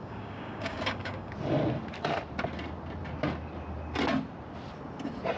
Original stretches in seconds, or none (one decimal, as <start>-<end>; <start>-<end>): 1.3-5.4